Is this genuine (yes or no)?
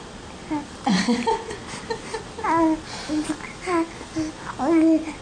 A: yes